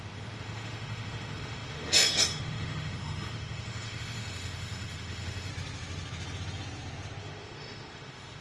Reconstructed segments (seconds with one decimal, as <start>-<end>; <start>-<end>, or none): 0.0-5.5; 7.2-8.4